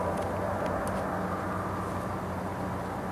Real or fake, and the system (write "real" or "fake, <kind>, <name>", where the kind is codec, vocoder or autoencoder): real